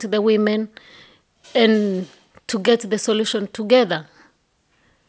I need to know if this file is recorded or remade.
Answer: recorded